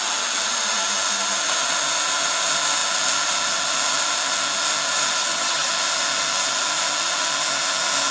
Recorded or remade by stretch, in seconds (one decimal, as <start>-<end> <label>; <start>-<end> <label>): 0.0-5.2 recorded; 5.2-5.7 remade; 5.7-8.1 recorded